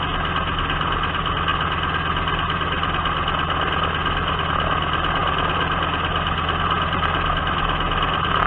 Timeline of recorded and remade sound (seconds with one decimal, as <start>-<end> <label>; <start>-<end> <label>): 0.0-8.5 recorded

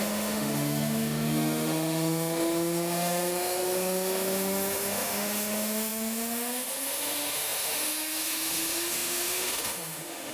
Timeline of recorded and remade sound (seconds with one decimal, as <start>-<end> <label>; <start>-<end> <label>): 0.0-10.3 remade